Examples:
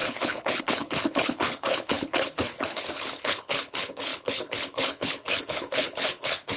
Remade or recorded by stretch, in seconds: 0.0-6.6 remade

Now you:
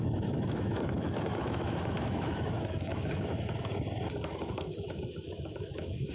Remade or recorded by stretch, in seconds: 0.0-3.7 remade; 3.7-4.3 recorded; 4.3-6.1 remade

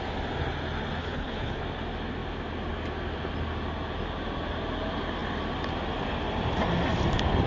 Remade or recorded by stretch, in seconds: 0.0-1.0 recorded; 1.0-1.6 remade; 1.6-7.5 recorded

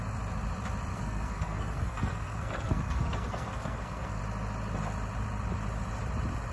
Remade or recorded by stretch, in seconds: 0.0-0.9 recorded; 0.9-4.2 remade; 4.2-6.5 recorded

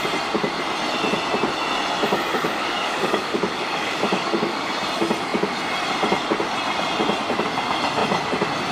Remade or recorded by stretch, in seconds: 0.0-2.3 recorded; 2.3-4.7 remade; 4.7-8.7 recorded

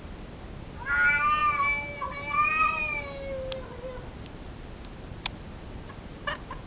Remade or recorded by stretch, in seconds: 0.0-6.7 recorded

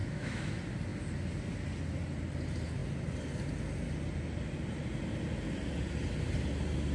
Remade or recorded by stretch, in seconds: 0.0-0.5 remade; 0.5-6.9 recorded

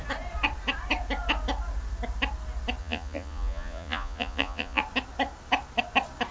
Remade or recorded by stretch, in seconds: 0.0-2.8 recorded; 2.8-4.8 remade; 4.8-6.3 recorded